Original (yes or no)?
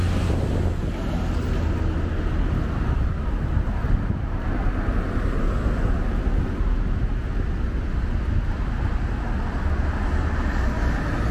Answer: yes